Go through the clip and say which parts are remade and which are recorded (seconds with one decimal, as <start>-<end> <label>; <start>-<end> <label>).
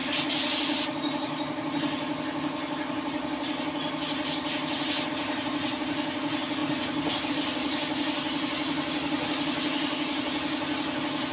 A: 0.0-11.3 recorded